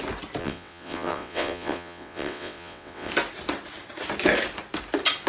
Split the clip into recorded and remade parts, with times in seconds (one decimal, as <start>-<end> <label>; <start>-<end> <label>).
0.0-0.4 recorded; 0.4-3.1 remade; 3.1-5.3 recorded